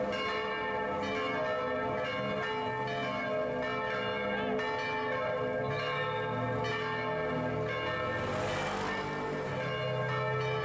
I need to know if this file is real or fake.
real